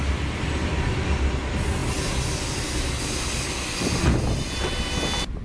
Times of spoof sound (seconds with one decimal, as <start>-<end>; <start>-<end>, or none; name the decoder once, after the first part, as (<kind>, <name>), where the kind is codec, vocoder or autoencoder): none